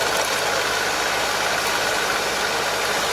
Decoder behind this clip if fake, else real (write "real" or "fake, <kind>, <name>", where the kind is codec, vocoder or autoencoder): real